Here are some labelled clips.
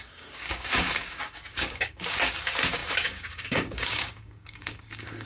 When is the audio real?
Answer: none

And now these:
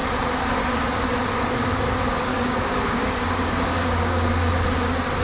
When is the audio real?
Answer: 0.0-2.3; 4.5-5.2

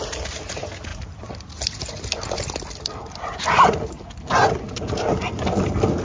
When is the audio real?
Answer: 0.0-6.0

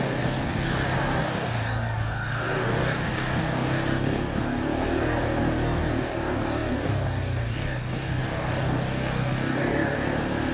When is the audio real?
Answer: none

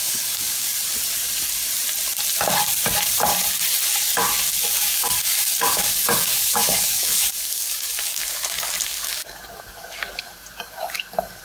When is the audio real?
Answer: 0.7-4.7

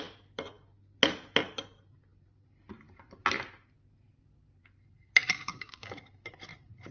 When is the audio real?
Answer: 0.0-5.5; 6.1-6.9

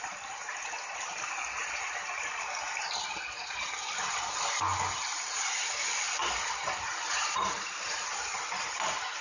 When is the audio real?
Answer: 0.0-9.2